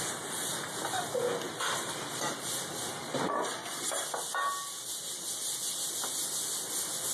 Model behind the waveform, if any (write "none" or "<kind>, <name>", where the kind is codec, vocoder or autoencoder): none